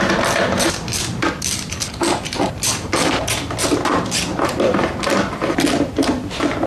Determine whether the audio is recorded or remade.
remade